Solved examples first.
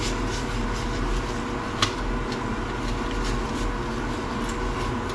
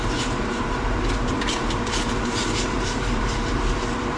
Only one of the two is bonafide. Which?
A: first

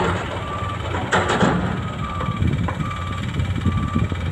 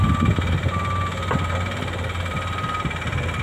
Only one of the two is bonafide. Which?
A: second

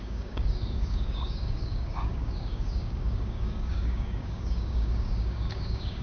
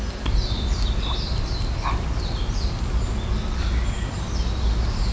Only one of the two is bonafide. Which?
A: second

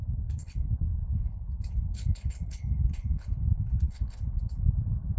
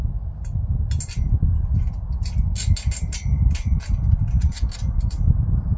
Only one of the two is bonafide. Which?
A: second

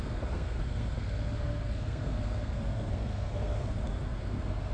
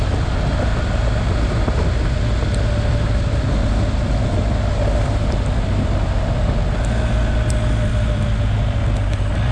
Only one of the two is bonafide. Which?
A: second